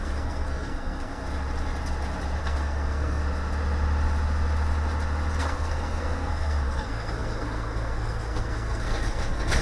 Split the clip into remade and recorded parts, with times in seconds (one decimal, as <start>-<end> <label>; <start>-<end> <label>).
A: 0.0-1.2 remade; 1.2-2.4 recorded; 2.4-3.2 remade; 3.2-5.4 recorded; 5.4-9.6 remade